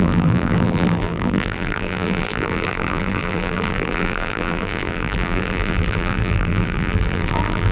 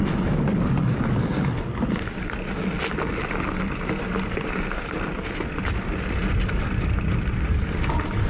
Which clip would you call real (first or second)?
second